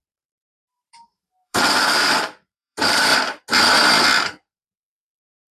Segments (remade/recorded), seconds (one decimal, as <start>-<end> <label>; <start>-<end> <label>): 0.0-3.1 remade; 3.1-5.5 recorded